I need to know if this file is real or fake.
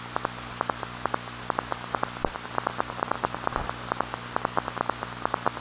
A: real